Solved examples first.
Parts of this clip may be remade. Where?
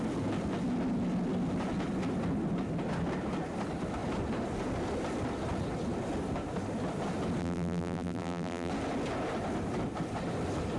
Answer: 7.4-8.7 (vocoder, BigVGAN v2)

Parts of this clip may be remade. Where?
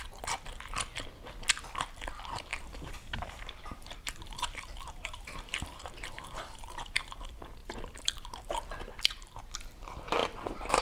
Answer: 2.5-7.1 (vocoder, BigVGAN v2); 7.6-8.6; 10.2-10.8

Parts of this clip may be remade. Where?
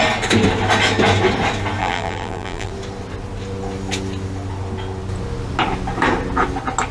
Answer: 1.8-2.7 (vocoder, BigVGAN v2)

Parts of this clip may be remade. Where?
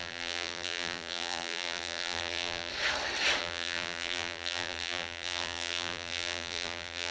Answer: 0.0-2.7 (vocoder, BigVGAN v2); 3.4-7.1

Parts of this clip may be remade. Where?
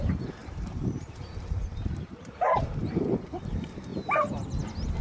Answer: 0.4-3.4 (vocoder, BigVGAN v2)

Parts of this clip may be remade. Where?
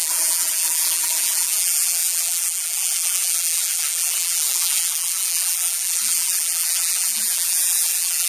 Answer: 0.0-8.3 (vocoder, BigVGAN v2)